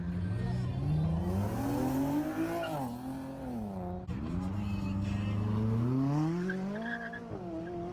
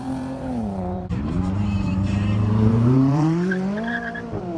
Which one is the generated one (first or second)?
second